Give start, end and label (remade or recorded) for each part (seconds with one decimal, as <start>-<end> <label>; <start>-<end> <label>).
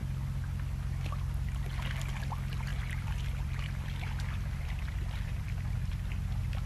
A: 0.0-2.7 recorded; 2.7-5.9 remade; 5.9-6.7 recorded